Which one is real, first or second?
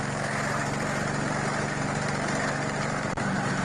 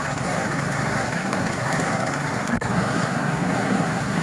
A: first